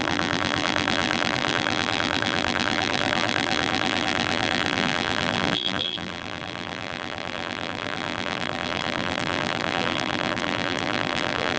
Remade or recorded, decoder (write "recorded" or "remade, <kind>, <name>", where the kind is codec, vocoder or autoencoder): remade, vocoder, BigVGAN v2